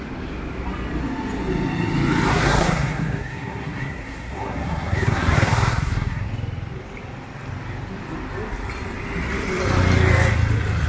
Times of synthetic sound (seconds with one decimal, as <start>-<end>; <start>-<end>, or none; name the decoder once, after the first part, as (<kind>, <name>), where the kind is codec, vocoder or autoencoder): 2.3-6.3 (codec, SNAC)